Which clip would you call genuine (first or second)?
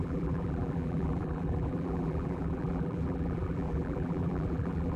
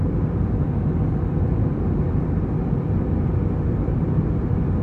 second